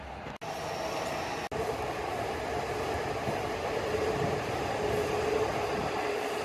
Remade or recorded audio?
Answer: recorded